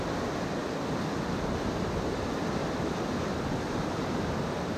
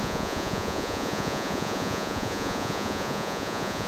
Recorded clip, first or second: first